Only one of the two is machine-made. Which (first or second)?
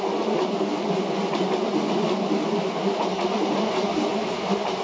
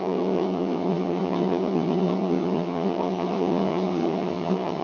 second